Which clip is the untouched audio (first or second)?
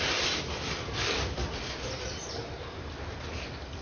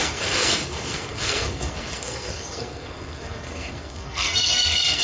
first